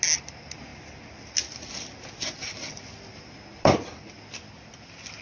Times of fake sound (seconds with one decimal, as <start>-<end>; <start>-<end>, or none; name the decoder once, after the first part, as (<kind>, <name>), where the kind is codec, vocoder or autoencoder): none